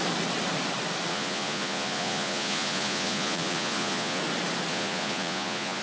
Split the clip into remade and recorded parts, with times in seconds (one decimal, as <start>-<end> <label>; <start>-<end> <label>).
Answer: 0.0-1.1 recorded; 1.1-4.2 remade; 4.2-4.7 recorded; 4.7-5.8 remade